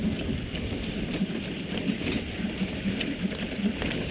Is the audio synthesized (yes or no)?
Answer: no